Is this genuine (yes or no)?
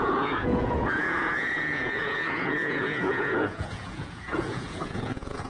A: no